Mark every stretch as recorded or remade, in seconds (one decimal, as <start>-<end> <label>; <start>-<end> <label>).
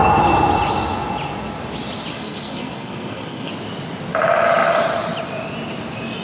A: 0.0-2.1 recorded; 2.1-3.5 remade; 3.5-6.2 recorded